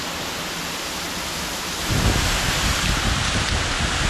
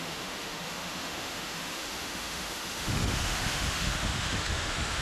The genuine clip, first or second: first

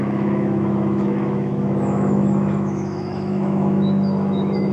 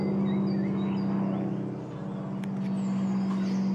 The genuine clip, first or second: second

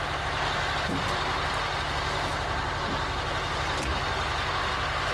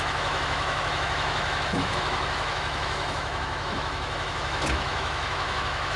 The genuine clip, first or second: first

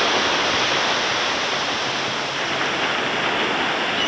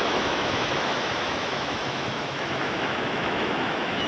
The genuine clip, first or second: first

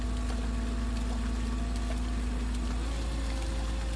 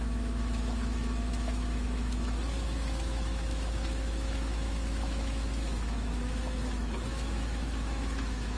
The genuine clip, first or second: first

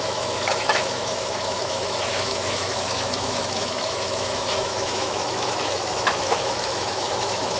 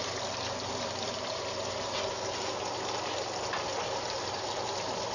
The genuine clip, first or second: second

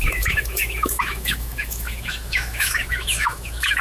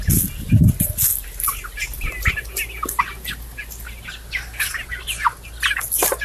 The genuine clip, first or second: second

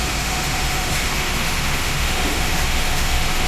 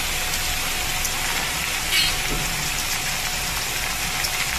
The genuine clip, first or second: second